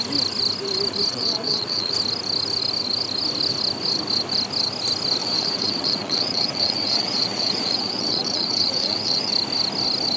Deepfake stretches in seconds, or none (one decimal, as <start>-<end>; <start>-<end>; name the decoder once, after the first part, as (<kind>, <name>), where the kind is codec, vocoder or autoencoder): 1.1-1.9 (vocoder, WaveNeXt); 5.2-9.3